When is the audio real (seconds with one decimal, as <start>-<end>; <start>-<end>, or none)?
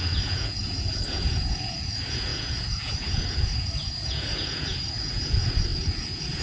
none